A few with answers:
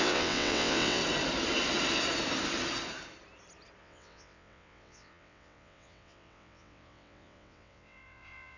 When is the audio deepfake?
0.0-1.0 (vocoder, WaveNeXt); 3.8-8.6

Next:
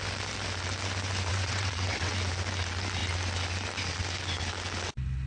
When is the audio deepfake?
1.3-2.1 (vocoder, WaveNeXt)